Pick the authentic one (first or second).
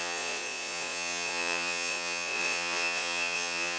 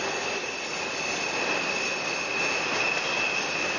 second